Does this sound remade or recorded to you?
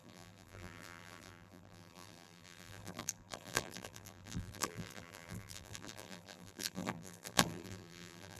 remade